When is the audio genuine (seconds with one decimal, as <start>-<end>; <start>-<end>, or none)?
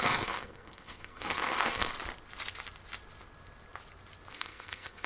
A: 1.9-4.3